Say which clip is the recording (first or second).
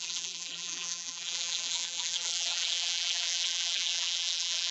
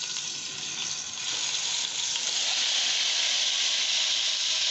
second